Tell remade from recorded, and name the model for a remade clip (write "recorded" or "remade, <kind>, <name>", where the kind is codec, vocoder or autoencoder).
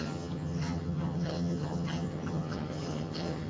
remade, vocoder, HiFi-GAN